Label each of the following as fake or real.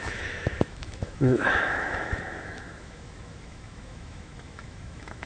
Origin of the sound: fake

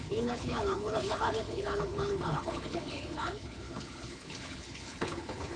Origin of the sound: fake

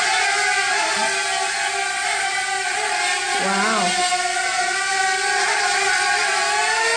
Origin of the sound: real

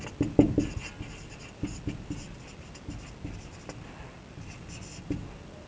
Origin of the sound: real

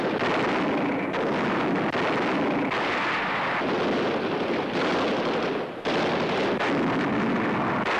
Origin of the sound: real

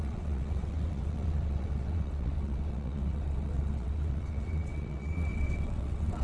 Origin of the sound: fake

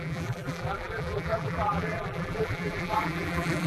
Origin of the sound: fake